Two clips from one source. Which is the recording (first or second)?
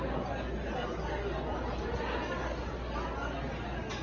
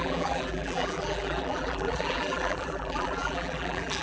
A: first